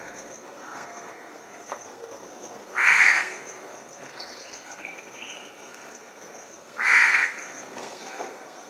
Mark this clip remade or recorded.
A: remade